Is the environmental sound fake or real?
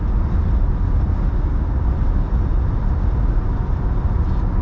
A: real